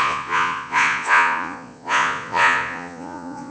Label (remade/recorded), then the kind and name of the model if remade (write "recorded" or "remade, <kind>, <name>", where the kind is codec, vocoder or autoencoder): remade, vocoder, Vocos